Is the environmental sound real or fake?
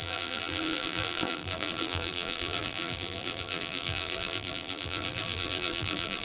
fake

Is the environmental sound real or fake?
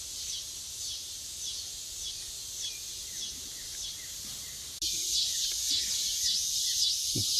real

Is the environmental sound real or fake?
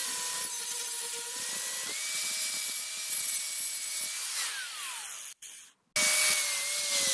real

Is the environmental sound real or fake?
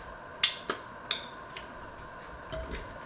real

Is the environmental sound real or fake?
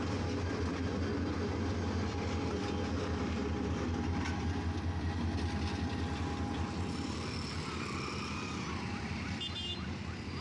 real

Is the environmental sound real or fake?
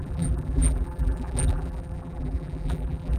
fake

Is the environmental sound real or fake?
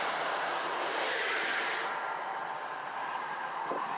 fake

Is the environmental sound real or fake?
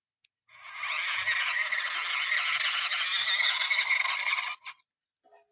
real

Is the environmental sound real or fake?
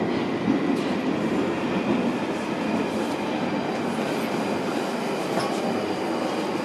real